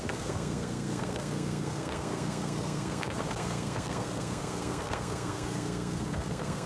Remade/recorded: remade